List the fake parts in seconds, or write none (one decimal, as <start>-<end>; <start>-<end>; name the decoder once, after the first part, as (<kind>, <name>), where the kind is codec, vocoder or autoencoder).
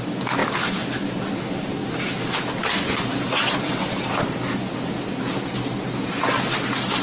none